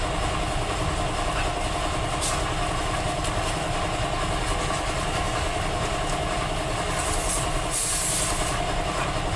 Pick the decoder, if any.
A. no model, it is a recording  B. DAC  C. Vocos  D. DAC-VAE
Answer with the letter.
A